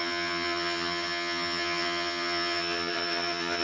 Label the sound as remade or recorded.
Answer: remade